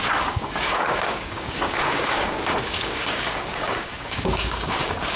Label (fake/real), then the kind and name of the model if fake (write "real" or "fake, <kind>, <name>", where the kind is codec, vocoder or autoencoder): fake, codec, DAC